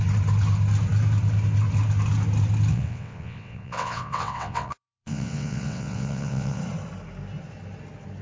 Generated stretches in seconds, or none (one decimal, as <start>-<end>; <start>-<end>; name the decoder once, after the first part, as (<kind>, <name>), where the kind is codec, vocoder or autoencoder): 2.7-6.6 (vocoder, WaveNeXt)